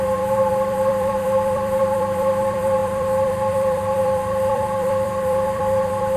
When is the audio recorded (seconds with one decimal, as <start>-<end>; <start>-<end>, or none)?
none